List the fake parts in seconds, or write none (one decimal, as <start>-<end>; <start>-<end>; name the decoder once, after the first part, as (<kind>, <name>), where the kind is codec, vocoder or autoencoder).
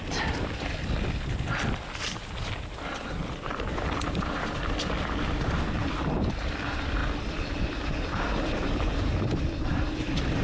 0.0-7.0 (vocoder, BigVGAN v2); 7.6-10.4